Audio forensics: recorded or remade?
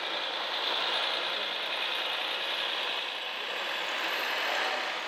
recorded